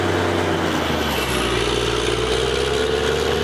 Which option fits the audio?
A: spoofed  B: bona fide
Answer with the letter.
B